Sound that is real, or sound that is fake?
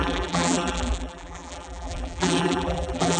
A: fake